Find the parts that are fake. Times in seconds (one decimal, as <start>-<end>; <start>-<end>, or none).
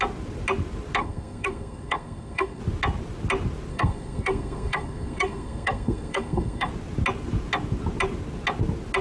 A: 1.0-2.6; 3.7-6.7